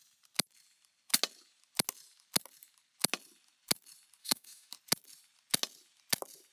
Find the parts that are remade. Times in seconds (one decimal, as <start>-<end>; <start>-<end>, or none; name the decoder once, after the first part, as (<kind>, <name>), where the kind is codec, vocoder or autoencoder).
4.2-4.7 (autoencoder, DAC-VAE)